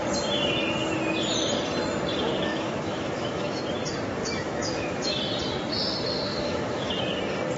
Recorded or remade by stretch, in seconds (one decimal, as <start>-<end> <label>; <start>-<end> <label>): 0.0-2.5 recorded; 2.5-3.6 remade; 3.6-4.2 recorded; 4.2-5.2 remade; 5.2-6.3 recorded; 6.3-6.9 remade; 6.9-7.6 recorded